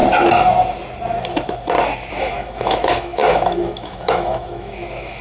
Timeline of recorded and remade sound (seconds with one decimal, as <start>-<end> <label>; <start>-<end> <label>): 0.0-2.1 recorded; 2.1-5.2 remade